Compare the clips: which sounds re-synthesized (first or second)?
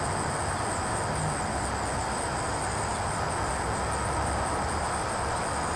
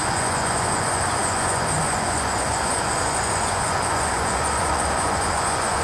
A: second